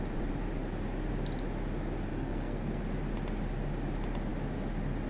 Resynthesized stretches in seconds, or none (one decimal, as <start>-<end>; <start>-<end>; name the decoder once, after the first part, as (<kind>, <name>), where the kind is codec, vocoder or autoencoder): 2.1-2.8 (codec, SNAC)